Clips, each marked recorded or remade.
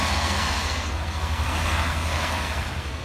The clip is remade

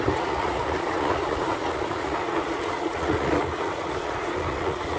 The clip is remade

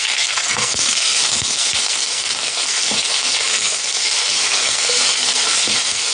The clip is remade